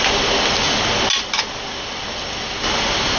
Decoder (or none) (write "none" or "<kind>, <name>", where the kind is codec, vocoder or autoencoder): none